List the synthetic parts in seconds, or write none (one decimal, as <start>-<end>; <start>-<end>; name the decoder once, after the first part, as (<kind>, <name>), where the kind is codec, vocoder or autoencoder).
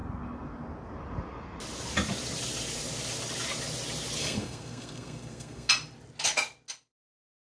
4.2-5.7 (codec, SNAC)